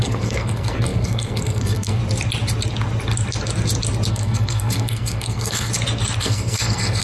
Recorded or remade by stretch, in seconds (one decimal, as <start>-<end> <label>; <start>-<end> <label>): 0.0-2.0 remade; 2.0-4.1 recorded; 4.1-5.7 remade; 5.7-6.2 recorded; 6.2-7.0 remade